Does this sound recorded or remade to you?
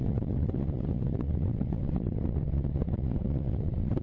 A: remade